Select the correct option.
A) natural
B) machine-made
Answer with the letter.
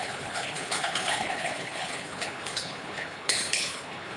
B